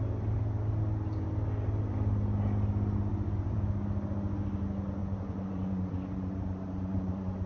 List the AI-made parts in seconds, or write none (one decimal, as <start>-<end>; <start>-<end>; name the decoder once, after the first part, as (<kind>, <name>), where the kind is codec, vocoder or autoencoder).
3.1-3.6 (vocoder, Vocos); 5.0-7.5